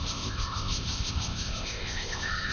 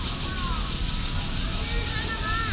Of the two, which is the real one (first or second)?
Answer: second